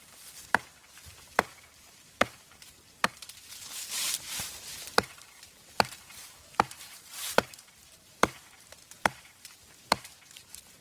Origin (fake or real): fake